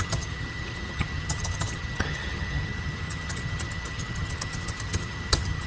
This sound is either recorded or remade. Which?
remade